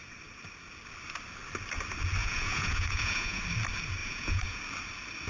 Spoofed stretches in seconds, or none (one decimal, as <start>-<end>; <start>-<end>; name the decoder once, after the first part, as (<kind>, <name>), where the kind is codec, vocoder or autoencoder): 2.2-3.4 (vocoder, Vocos); 4.0-4.6